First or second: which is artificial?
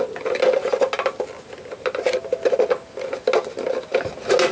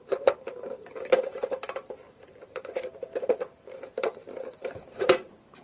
second